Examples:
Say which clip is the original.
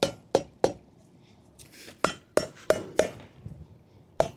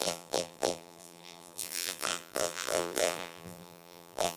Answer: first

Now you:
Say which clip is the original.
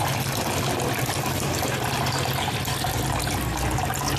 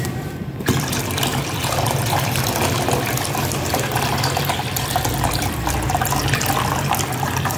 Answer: first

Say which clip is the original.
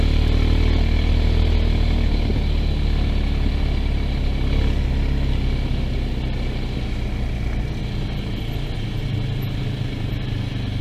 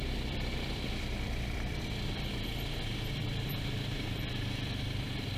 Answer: first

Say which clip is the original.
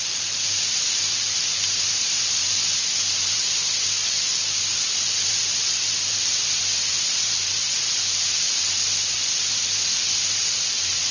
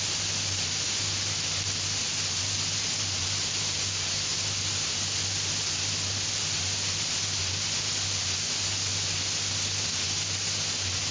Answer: second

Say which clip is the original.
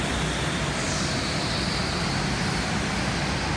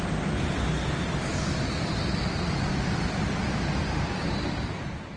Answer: first